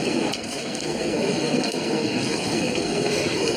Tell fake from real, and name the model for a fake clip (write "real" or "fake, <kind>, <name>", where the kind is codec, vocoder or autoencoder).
fake, codec, SNAC